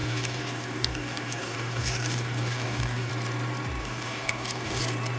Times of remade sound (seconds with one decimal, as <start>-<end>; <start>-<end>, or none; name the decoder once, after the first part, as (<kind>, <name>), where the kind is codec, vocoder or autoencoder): 0.0-3.1 (codec, DAC); 3.8-4.8